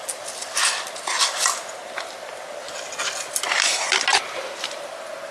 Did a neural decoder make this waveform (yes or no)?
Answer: no